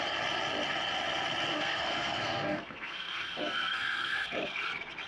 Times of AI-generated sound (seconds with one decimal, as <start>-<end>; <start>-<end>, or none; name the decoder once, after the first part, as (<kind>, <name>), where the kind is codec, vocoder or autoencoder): 1.5-4.6 (codec, SNAC)